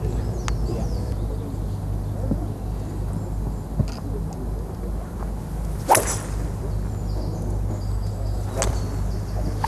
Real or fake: real